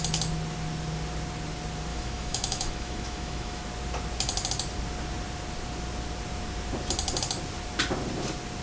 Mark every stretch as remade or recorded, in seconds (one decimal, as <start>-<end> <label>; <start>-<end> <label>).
0.0-1.9 recorded; 1.9-3.6 remade; 3.6-8.6 recorded